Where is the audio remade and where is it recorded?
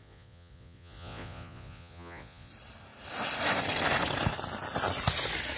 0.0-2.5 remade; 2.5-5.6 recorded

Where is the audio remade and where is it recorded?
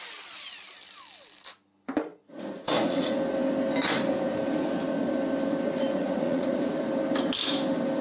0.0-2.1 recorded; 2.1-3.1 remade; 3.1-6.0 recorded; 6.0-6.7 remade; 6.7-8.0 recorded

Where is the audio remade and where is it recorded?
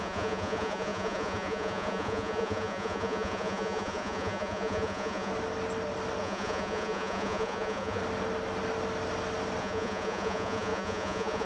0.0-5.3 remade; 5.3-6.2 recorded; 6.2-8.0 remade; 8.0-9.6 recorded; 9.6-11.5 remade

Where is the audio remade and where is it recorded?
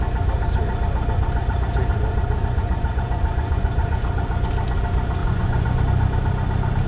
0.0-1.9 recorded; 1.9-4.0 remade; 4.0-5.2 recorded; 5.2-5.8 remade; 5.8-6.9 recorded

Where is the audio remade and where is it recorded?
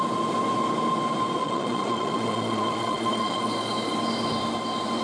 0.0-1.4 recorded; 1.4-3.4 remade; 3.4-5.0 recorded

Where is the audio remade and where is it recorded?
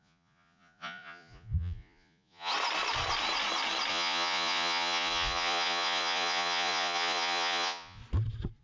0.0-2.5 remade; 2.5-3.9 recorded; 3.9-8.0 remade; 8.0-8.6 recorded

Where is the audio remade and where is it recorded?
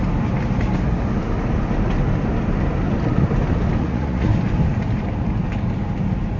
0.0-3.8 recorded; 3.8-4.3 remade; 4.3-6.4 recorded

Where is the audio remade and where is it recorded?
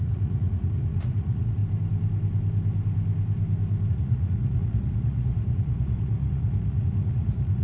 0.0-1.6 remade; 1.6-3.9 recorded; 3.9-7.6 remade